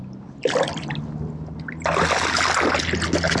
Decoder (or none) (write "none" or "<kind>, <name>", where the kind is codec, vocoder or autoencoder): none